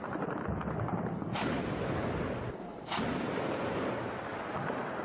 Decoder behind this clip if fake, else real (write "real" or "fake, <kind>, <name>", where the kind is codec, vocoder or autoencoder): real